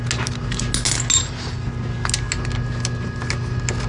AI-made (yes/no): no